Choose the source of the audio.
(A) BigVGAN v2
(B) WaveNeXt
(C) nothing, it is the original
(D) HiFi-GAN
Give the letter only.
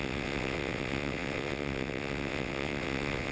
B